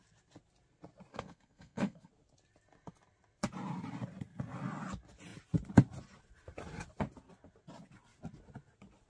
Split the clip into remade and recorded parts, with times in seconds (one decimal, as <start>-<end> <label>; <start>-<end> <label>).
0.0-1.1 recorded; 1.1-2.1 remade; 2.1-9.1 recorded